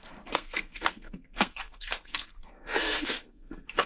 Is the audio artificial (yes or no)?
yes